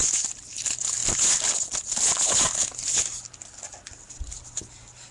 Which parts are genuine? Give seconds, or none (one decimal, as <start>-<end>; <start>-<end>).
0.0-5.1